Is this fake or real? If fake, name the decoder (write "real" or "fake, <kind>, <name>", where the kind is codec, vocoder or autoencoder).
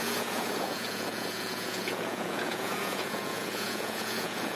fake, vocoder, Vocos